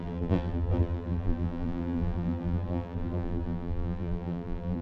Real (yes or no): no